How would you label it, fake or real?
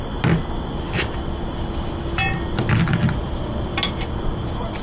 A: real